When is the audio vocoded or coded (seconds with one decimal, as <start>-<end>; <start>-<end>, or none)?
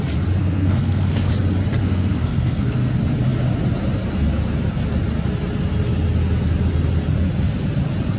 0.4-1.3; 1.8-2.9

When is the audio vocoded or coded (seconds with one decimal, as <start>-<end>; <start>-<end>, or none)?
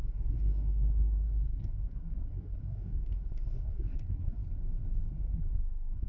0.0-4.4; 5.1-6.1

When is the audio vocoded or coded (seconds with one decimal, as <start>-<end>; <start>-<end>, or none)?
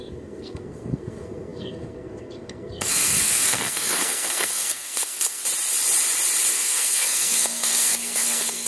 0.0-5.4; 6.5-8.7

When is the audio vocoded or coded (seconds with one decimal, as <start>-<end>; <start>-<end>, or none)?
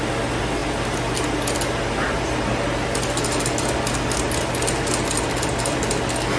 none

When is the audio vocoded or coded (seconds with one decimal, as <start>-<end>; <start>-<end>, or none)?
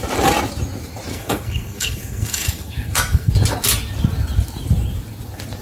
1.1-3.3